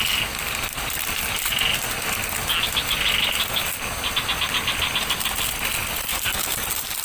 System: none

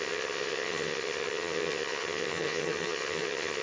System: vocoder, HiFi-GAN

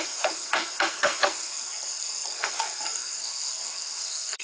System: codec, SNAC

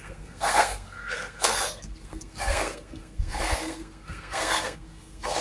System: codec, SNAC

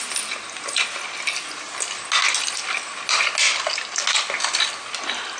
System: none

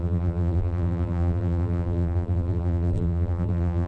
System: vocoder, BigVGAN v2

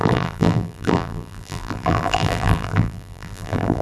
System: vocoder, BigVGAN v2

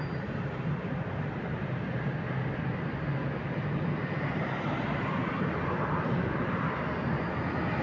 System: none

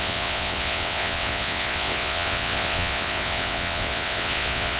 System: vocoder, WaveNeXt